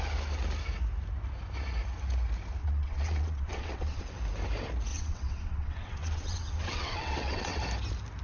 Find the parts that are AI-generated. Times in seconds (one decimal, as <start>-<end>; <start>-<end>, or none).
2.6-4.0; 4.9-7.6